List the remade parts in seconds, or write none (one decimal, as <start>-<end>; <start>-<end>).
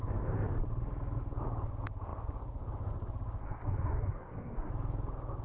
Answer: 3.4-4.7